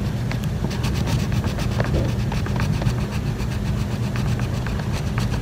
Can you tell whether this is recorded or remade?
recorded